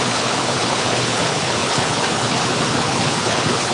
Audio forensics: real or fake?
fake